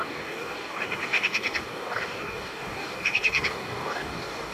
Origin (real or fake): fake